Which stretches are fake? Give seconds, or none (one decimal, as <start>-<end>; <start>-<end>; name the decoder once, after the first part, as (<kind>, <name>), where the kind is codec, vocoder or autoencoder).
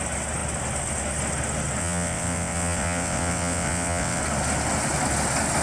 1.8-4.2 (vocoder, WaveNeXt)